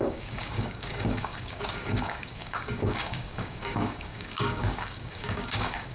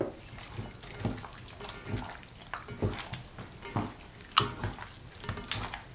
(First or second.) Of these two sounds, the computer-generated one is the first